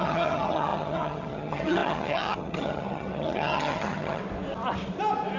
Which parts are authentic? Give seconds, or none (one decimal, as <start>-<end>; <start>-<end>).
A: 4.2-5.4

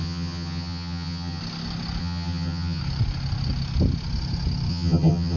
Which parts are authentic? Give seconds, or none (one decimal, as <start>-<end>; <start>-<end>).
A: 1.4-2.0; 2.8-4.7

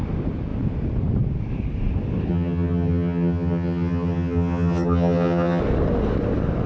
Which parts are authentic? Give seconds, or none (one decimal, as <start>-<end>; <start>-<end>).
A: 0.0-2.3; 5.6-6.7

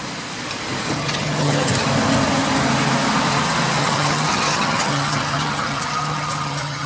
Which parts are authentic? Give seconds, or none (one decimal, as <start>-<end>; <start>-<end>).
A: 0.0-1.0; 1.7-3.8

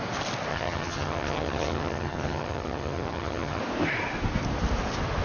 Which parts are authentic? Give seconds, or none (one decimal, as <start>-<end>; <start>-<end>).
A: 0.0-0.5; 3.6-5.2

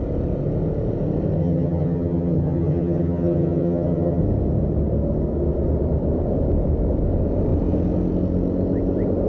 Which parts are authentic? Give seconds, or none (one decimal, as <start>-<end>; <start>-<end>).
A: 0.0-1.4; 4.2-9.3